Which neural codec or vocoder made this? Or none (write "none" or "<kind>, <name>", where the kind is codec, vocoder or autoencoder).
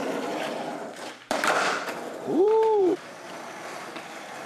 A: vocoder, BigVGAN v2